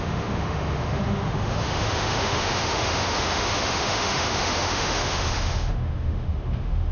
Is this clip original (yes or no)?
no